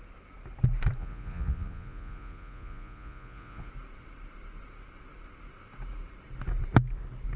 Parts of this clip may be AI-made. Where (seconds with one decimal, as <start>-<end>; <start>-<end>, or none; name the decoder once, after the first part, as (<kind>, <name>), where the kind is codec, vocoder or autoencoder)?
1.0-3.7 (vocoder, Vocos)